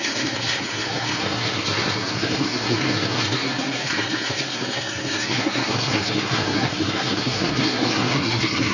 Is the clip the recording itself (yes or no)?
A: no